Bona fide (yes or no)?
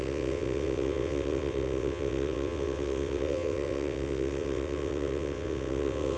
no